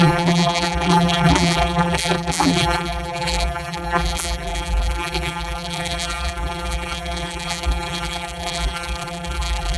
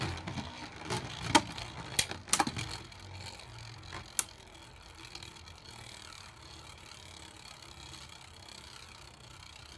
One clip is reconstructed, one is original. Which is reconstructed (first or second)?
first